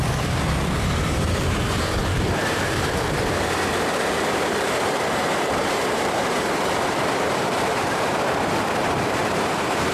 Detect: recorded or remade remade